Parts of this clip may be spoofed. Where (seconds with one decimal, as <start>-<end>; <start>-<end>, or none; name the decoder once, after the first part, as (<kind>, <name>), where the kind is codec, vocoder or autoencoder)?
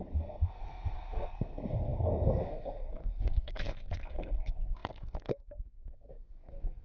0.0-6.8 (codec, SNAC)